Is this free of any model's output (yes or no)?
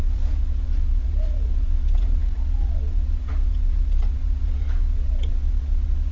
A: no